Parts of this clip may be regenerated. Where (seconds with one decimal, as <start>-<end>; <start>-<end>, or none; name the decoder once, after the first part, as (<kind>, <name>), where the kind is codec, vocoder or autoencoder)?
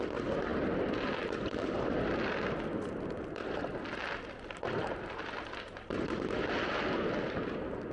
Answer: none